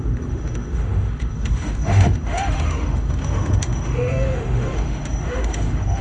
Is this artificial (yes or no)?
yes